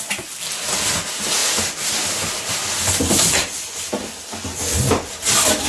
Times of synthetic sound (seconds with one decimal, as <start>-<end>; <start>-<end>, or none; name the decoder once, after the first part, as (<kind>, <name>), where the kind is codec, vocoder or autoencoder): none